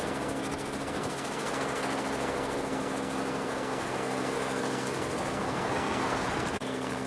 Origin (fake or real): fake